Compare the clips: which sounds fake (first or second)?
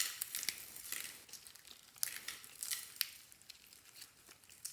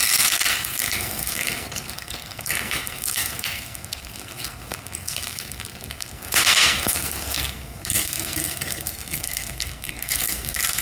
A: second